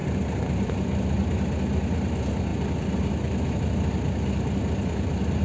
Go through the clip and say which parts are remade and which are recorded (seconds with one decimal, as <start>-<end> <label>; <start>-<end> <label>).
0.0-1.0 remade; 1.0-2.5 recorded; 2.5-3.6 remade; 3.6-5.4 recorded